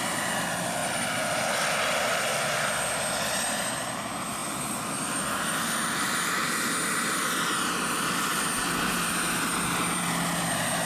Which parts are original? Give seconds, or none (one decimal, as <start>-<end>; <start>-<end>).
0.0-10.9